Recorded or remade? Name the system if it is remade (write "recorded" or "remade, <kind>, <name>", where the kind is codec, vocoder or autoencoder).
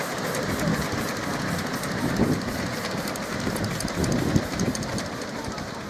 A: recorded